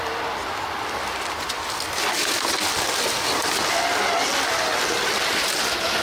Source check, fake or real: real